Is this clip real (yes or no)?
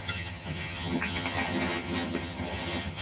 no